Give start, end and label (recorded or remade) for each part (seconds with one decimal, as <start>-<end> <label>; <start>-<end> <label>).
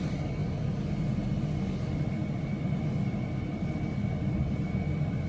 0.0-2.2 recorded; 2.2-2.8 remade; 2.8-3.5 recorded; 3.5-5.3 remade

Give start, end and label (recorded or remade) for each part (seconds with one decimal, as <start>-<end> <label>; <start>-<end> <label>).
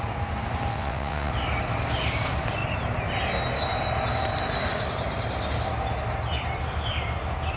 0.0-0.7 recorded; 0.7-1.3 remade; 1.3-7.6 recorded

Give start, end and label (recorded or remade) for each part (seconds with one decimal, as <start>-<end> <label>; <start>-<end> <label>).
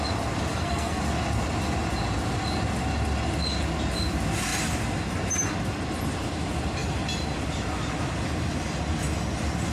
0.0-0.5 recorded; 0.5-1.0 remade; 1.0-9.7 recorded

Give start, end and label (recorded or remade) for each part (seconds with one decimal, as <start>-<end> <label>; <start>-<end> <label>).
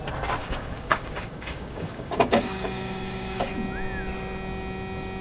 0.0-0.4 recorded; 0.4-3.5 remade; 3.5-5.2 recorded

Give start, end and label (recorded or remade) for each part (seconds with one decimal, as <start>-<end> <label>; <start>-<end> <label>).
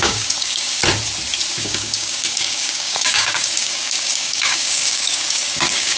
0.0-0.8 remade; 0.8-1.6 recorded; 1.6-6.0 remade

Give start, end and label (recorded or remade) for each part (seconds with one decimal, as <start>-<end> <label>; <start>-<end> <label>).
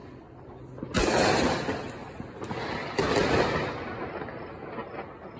0.0-5.4 recorded